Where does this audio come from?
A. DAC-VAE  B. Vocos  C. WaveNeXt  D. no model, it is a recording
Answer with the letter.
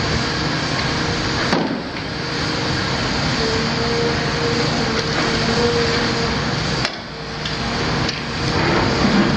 D